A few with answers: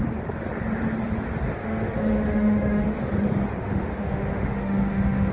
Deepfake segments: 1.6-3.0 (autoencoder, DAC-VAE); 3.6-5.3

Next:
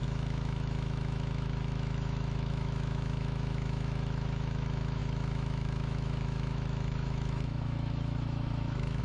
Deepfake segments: 0.0-9.0 (autoencoder, DAC-VAE)

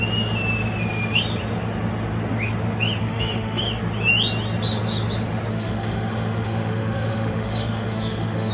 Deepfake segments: 3.0-3.6 (autoencoder, DAC-VAE); 5.5-8.5

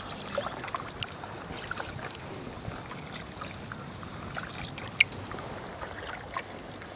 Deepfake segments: none